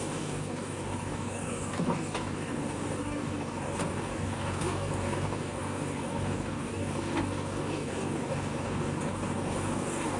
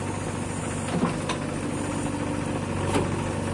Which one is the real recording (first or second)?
second